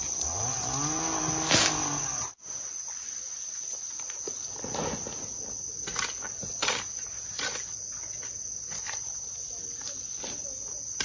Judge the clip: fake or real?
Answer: real